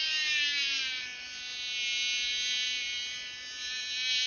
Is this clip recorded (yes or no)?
yes